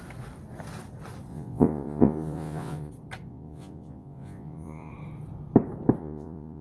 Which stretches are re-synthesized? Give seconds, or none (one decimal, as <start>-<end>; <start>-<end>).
1.3-2.9; 3.3-4.9; 6.0-6.6

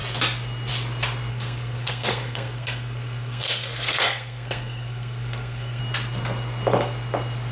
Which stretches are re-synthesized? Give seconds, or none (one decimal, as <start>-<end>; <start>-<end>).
1.3-5.8

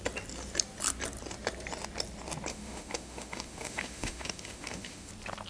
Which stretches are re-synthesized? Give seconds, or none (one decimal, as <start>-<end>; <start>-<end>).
2.5-5.1

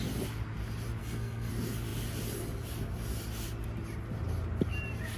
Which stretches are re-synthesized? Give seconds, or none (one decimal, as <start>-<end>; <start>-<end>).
1.0-1.5